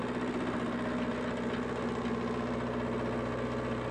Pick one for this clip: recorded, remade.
recorded